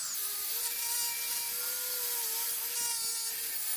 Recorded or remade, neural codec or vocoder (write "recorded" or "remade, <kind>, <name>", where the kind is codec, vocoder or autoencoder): recorded